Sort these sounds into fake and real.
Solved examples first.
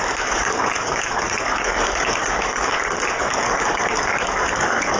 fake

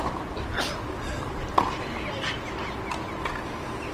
real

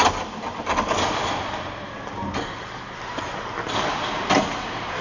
real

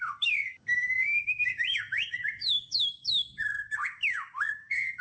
fake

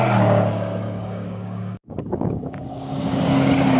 fake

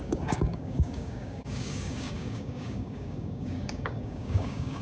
fake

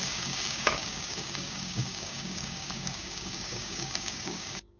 fake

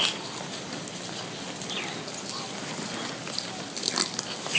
real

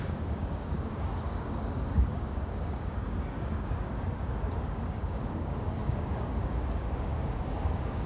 fake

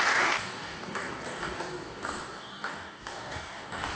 fake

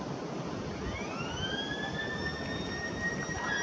real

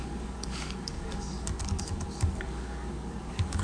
fake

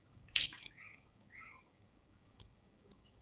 fake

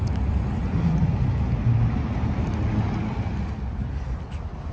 real